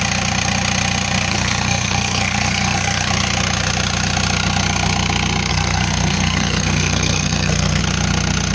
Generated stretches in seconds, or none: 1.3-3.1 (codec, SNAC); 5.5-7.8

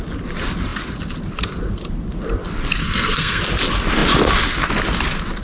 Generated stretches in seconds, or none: 2.8-3.4 (codec, SNAC)

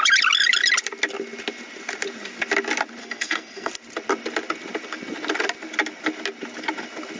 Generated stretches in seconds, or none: 3.0-3.7 (codec, SNAC)

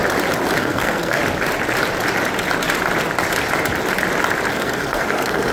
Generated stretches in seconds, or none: 0.6-1.2 (codec, SNAC); 4.5-5.5

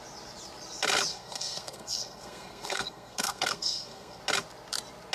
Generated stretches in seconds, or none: 1.1-4.2 (codec, SNAC)